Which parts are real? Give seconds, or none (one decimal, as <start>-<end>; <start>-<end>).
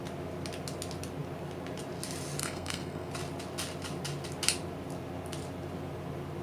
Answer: 0.0-2.4; 3.1-6.4